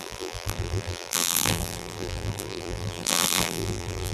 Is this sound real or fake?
fake